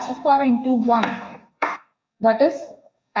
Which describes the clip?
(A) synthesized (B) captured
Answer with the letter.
A